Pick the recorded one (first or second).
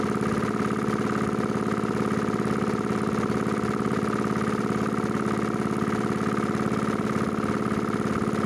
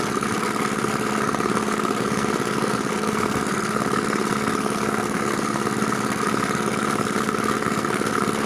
first